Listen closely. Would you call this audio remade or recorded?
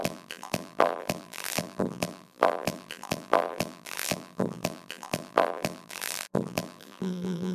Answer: remade